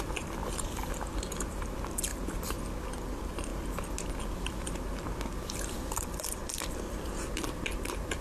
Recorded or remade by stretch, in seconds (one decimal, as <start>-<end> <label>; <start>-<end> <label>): 0.0-0.4 remade; 0.4-1.3 recorded; 1.3-2.1 remade; 2.1-2.8 recorded; 2.8-3.5 remade; 3.5-4.1 recorded; 4.1-8.2 remade